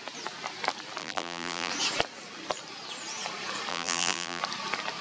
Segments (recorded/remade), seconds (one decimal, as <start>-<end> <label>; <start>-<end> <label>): 0.0-1.0 recorded; 1.0-1.7 remade; 1.7-3.7 recorded; 3.7-4.4 remade; 4.4-5.0 recorded